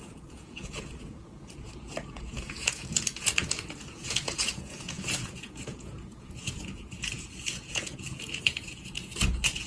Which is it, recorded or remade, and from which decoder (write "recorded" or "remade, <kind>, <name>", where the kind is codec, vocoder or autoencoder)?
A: remade, vocoder, Vocos